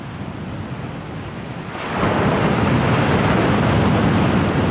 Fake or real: real